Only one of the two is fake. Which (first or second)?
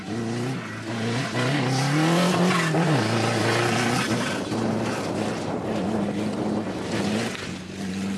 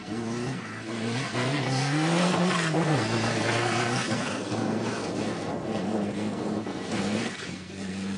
second